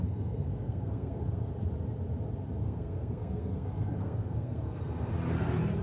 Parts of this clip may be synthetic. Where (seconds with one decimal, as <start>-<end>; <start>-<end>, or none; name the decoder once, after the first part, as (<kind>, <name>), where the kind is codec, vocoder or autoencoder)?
0.0-1.5 (codec, SNAC); 2.6-5.1